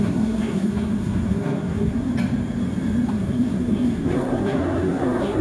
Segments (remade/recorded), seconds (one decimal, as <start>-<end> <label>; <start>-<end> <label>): 0.0-2.1 remade; 2.1-3.1 recorded; 3.1-5.4 remade